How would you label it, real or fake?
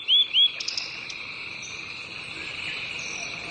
real